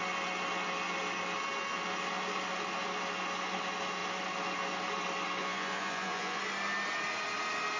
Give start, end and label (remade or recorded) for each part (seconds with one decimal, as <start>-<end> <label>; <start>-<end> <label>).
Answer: 0.0-5.4 recorded; 5.4-6.4 remade; 6.4-7.8 recorded